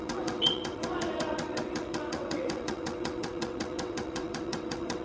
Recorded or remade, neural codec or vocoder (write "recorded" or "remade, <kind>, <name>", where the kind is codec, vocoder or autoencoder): remade, vocoder, WaveNeXt